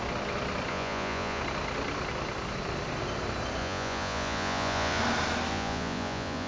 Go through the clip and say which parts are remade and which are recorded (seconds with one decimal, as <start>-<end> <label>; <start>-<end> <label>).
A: 0.0-0.7 recorded; 0.7-1.4 remade; 1.4-3.6 recorded; 3.6-5.0 remade; 5.0-5.5 recorded; 5.5-6.5 remade